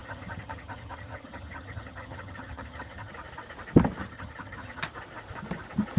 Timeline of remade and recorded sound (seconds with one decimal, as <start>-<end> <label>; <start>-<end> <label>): 0.0-3.1 remade; 3.1-4.0 recorded; 4.0-4.8 remade; 4.8-6.0 recorded

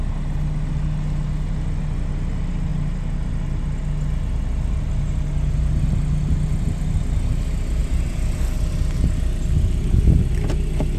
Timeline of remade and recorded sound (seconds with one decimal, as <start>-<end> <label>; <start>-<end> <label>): 0.0-7.8 recorded; 7.8-8.7 remade; 8.7-11.0 recorded

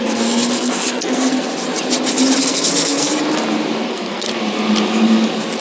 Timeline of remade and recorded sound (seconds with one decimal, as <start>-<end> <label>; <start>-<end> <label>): 0.0-1.5 remade; 1.5-2.4 recorded; 2.4-3.1 remade; 3.1-3.9 recorded; 3.9-4.3 remade; 4.3-5.6 recorded

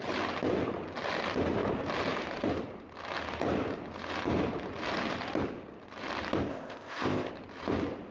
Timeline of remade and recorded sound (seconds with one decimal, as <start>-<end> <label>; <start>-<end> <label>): 0.0-6.5 recorded; 6.5-7.3 remade; 7.3-8.1 recorded

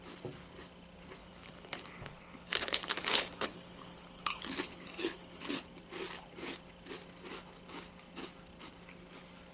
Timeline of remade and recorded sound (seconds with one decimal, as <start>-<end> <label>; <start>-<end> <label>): 0.0-1.2 recorded; 1.2-5.7 remade; 5.7-9.5 recorded

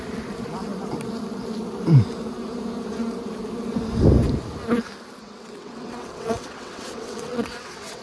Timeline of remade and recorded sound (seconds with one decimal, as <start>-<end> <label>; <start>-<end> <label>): 0.0-5.2 recorded; 5.2-8.0 remade